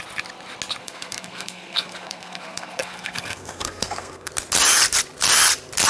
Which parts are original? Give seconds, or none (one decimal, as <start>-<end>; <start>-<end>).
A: 0.0-0.8; 4.3-5.9